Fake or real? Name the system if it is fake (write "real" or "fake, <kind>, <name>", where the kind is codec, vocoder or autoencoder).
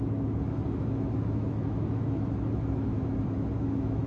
fake, autoencoder, DAC-VAE